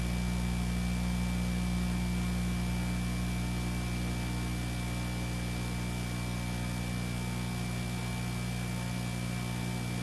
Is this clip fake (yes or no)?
no